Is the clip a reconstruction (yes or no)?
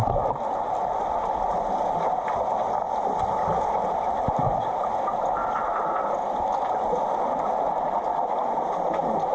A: no